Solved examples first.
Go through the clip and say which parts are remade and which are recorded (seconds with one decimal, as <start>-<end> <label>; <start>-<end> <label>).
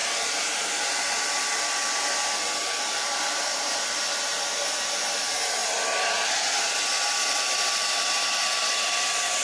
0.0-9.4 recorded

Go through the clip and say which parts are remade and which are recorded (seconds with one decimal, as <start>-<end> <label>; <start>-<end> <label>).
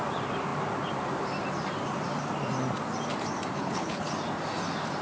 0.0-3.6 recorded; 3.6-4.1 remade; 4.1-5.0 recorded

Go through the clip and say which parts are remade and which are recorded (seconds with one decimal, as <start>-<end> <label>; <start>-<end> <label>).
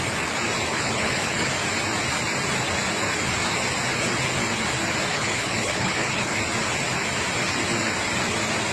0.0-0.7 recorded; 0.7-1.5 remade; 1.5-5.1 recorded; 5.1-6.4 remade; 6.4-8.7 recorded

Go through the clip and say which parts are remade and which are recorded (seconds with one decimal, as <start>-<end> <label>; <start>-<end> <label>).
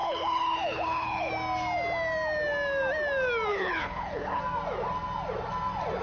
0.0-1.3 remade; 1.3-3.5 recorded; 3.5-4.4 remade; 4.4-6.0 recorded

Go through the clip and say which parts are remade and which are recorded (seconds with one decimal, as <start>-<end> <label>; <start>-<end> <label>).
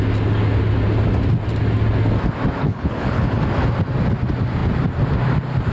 0.0-2.6 recorded; 2.6-3.4 remade; 3.4-5.7 recorded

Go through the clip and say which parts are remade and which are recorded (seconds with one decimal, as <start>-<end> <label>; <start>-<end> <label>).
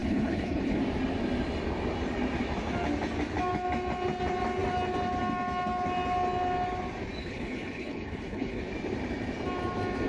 0.0-0.8 remade; 0.8-7.2 recorded; 7.2-8.6 remade; 8.6-10.1 recorded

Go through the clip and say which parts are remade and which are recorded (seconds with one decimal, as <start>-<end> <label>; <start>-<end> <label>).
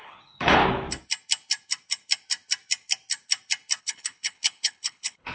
0.0-0.6 remade; 0.6-3.8 recorded; 3.8-5.3 remade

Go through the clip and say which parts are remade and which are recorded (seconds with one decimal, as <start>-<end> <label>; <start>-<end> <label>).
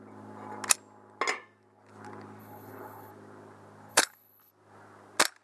0.0-2.4 recorded; 2.4-3.1 remade; 3.1-3.9 recorded; 3.9-4.5 remade; 4.5-5.4 recorded